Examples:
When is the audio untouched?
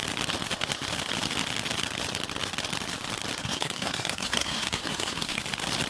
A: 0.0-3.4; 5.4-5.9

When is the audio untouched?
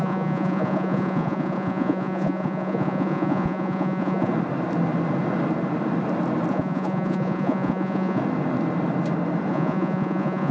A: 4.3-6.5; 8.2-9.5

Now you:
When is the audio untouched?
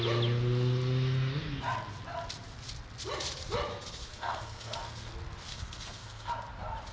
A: 0.0-3.7; 5.1-5.5; 6.3-6.9